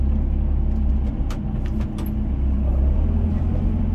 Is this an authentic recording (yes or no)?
yes